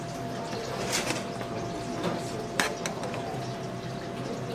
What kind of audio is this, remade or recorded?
recorded